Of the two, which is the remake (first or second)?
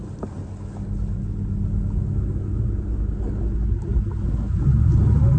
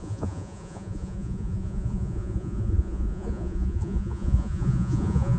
second